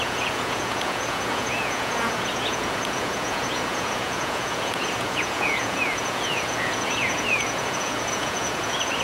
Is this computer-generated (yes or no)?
yes